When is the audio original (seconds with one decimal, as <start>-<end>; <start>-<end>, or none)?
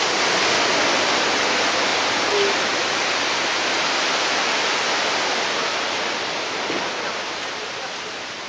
0.0-8.5